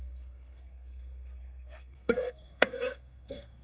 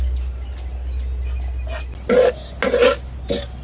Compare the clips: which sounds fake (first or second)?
first